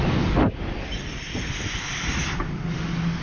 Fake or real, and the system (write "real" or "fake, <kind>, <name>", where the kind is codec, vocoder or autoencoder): real